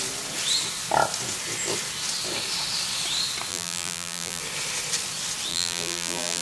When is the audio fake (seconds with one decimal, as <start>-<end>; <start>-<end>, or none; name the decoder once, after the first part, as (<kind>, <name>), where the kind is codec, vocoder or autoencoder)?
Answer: 3.5-4.4 (vocoder, BigVGAN v2); 5.5-6.4